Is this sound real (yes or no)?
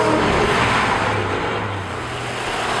yes